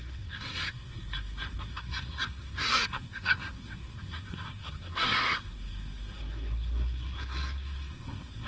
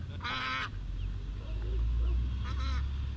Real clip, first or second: second